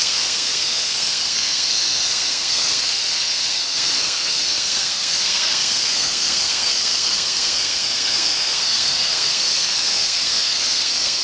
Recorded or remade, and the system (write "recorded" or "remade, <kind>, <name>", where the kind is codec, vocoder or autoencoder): remade, codec, SNAC